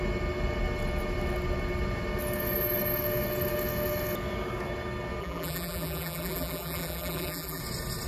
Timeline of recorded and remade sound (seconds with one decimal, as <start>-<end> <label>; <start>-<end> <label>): 0.0-5.2 recorded; 5.2-7.6 remade; 7.6-8.1 recorded